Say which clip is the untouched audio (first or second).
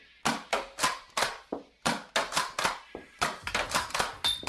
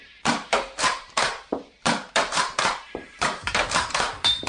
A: first